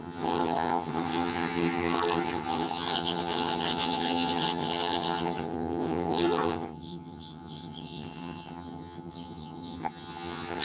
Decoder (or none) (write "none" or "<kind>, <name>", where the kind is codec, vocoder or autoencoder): vocoder, HiFi-GAN